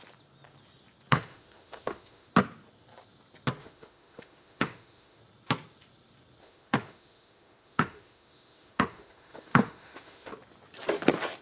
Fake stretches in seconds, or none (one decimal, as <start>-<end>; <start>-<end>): 1.1-2.3; 3.6-5.2; 6.4-10.3